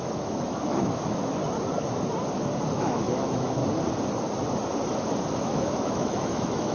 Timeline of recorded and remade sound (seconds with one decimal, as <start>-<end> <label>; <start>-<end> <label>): 0.0-1.4 remade; 1.4-2.7 recorded; 2.7-3.6 remade; 3.6-5.4 recorded; 5.4-6.7 remade